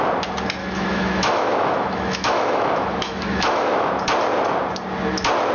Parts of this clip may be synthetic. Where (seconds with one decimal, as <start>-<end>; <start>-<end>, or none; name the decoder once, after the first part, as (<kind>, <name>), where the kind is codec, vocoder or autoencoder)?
0.6-3.9 (autoencoder, DAC-VAE)